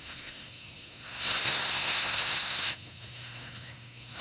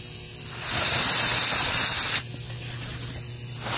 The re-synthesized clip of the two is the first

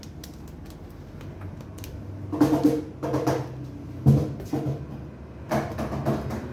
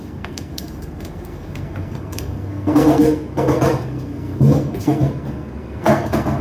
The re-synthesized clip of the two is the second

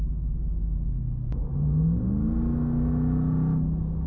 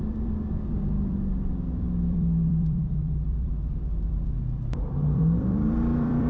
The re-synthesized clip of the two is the second